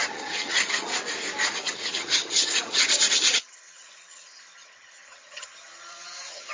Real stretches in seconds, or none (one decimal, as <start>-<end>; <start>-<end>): 0.9-1.5

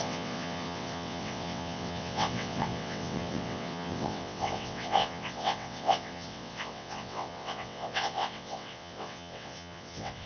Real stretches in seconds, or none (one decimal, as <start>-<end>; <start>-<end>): none

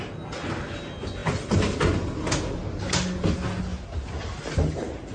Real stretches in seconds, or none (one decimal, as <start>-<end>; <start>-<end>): 0.0-5.1

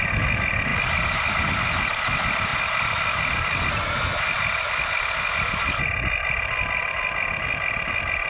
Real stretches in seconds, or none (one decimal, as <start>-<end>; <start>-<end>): 0.0-8.3

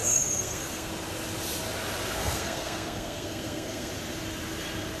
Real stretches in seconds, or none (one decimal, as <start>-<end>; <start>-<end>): 0.9-2.2; 3.9-5.0